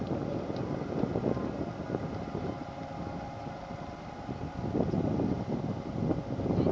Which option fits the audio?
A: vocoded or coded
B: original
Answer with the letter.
B